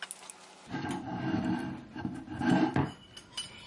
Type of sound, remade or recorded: recorded